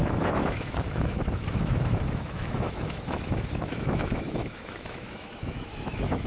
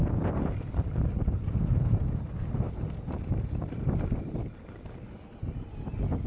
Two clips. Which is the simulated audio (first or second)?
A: first